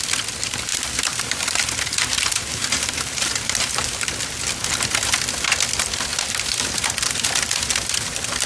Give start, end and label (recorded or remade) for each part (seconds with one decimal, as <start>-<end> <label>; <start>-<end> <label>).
0.0-0.7 recorded; 0.7-4.1 remade; 4.1-6.1 recorded; 6.1-6.6 remade; 6.6-8.5 recorded